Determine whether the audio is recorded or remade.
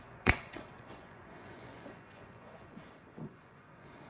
remade